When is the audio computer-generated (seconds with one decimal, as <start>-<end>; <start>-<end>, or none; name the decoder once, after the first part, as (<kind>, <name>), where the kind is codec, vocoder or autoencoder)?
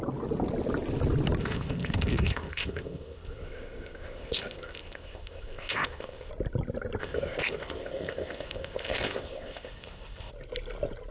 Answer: 1.4-6.3 (codec, ZipCodec); 7.0-10.3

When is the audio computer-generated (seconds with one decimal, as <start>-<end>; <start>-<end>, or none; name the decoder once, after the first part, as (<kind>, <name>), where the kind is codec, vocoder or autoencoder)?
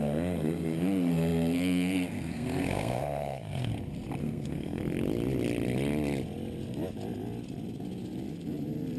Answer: 0.0-3.7 (codec, SNAC); 4.2-4.8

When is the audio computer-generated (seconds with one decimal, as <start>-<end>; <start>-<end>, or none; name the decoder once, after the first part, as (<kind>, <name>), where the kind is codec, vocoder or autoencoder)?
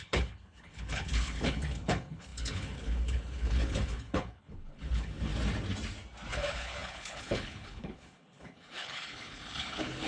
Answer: 0.0-5.3 (codec, HILCodec); 6.3-10.1